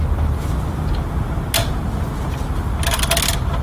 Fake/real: real